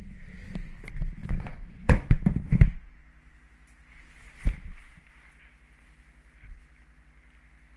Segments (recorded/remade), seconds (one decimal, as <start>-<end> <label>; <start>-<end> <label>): 0.0-1.2 recorded; 1.2-2.2 remade; 2.2-7.8 recorded